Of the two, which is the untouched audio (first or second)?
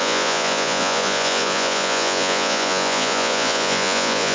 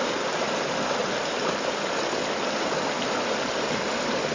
second